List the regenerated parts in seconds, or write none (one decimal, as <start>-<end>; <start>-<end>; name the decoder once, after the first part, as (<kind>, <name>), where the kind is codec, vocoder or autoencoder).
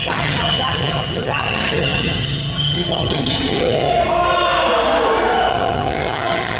0.0-3.9 (vocoder, HiFi-GAN); 5.5-6.6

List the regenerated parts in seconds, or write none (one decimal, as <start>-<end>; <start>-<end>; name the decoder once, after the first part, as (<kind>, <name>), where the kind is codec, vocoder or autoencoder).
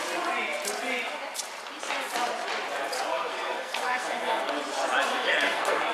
3.1-4.5 (codec, SNAC); 5.1-5.9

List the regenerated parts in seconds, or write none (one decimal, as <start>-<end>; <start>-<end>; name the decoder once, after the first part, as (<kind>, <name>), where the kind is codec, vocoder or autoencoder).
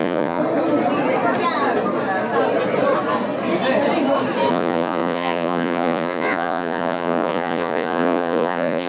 0.0-0.4 (vocoder, Vocos); 4.5-8.9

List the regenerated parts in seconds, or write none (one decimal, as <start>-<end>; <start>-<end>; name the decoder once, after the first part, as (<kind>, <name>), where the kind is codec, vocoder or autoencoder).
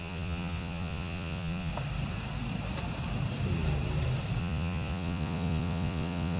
0.0-1.7 (vocoder, Vocos); 4.4-6.4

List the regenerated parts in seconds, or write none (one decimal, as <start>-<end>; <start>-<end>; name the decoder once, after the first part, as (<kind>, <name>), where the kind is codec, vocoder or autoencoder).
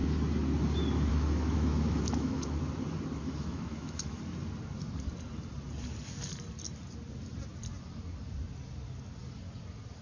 1.1-2.6 (autoencoder, DAC-VAE); 3.2-4.2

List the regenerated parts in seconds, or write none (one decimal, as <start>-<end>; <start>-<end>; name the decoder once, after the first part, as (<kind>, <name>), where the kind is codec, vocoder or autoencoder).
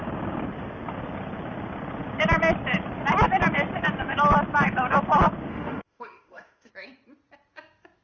5.5-6.7 (autoencoder, DAC-VAE)